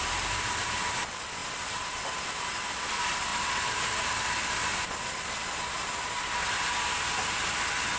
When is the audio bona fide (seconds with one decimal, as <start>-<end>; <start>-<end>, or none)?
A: 0.0-8.0